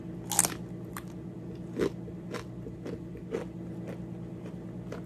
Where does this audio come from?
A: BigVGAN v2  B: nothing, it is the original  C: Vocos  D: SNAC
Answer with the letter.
B